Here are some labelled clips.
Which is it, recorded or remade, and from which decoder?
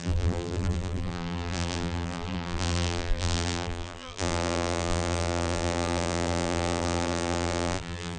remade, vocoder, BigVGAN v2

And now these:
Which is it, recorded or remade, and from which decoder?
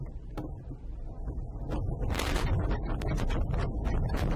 recorded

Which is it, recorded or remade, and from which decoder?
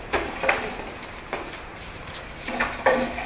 remade, vocoder, BigVGAN v2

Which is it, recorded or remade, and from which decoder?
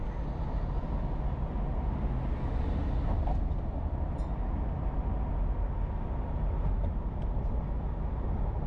recorded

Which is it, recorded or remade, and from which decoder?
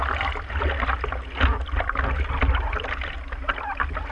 recorded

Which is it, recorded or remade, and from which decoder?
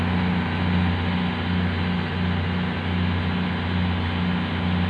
recorded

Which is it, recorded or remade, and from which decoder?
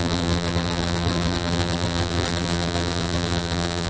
remade, vocoder, BigVGAN v2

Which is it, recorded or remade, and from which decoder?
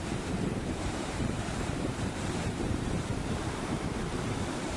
remade, vocoder, BigVGAN v2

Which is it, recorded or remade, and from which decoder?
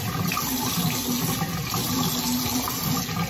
recorded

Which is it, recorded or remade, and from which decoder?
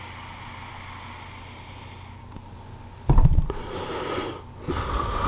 recorded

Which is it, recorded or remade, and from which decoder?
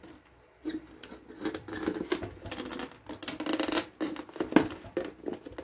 recorded